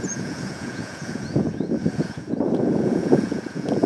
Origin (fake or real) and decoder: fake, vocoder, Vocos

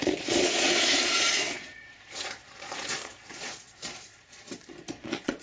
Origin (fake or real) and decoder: fake, vocoder, Vocos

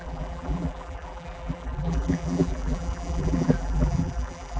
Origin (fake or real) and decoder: fake, vocoder, BigVGAN v2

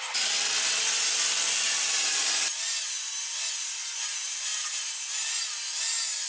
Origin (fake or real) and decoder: real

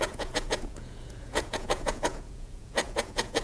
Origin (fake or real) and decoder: fake, vocoder, Vocos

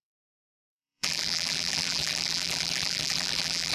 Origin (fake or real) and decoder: fake, vocoder, BigVGAN v2